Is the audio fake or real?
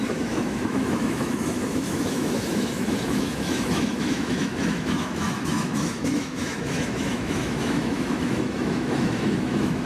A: fake